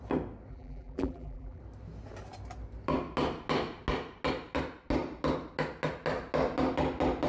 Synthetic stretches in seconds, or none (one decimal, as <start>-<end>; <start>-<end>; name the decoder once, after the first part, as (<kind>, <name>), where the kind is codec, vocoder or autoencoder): 0.5-1.6 (vocoder, BigVGAN v2)

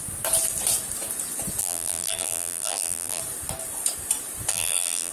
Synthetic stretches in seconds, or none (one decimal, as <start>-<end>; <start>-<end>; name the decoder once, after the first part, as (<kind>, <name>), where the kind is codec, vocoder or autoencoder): 1.6-3.2 (vocoder, BigVGAN v2); 4.5-5.1

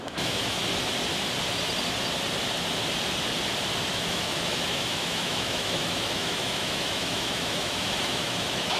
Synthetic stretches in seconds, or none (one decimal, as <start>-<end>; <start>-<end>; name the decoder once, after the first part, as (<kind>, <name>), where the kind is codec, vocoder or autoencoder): 0.0-0.6 (autoencoder, DAC-VAE); 3.9-8.8

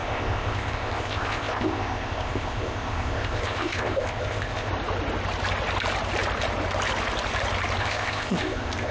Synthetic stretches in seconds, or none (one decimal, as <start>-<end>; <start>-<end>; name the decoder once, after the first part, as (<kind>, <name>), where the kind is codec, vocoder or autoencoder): 0.0-4.7 (codec, ZipCodec); 7.8-8.9

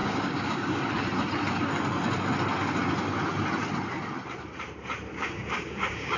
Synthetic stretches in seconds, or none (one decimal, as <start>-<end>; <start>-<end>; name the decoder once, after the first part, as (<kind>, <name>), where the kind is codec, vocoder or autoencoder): 0.0-0.8 (codec, DAC); 5.1-6.2

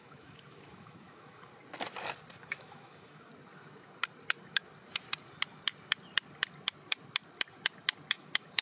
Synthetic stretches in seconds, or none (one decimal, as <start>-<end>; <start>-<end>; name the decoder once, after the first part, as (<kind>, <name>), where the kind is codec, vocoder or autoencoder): 0.0-1.5 (autoencoder, DAC-VAE); 2.4-3.3; 8.1-8.6